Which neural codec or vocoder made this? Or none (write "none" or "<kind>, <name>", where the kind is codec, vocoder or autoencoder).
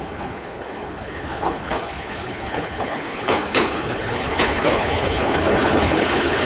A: codec, HILCodec